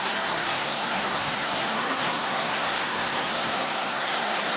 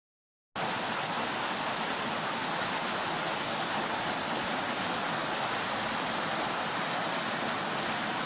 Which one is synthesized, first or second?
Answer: first